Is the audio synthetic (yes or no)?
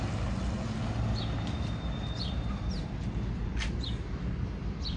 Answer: no